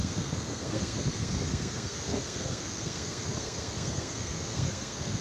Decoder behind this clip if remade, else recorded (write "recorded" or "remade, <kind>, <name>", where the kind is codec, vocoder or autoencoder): remade, codec, SNAC